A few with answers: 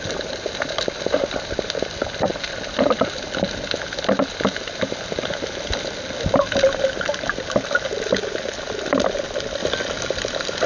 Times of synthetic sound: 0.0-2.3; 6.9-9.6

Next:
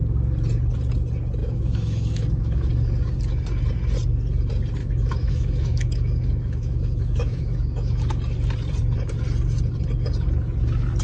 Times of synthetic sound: 1.4-2.7; 4.8-8.2

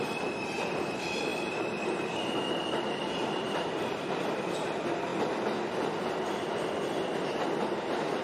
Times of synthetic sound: 0.0-5.1; 7.6-8.2